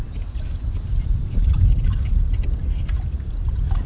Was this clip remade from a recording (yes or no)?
no